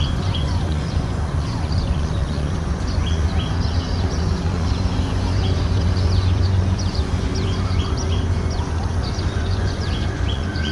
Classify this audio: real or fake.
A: fake